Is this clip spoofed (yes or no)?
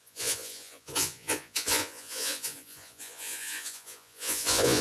yes